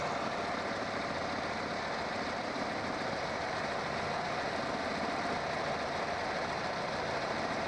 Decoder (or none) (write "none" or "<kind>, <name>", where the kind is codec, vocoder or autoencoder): none